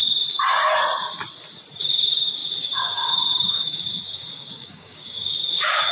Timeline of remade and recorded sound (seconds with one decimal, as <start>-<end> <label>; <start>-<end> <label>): 0.0-1.8 recorded; 1.8-5.9 remade